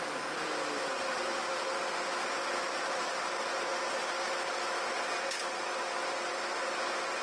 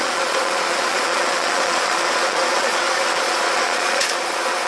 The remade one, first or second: second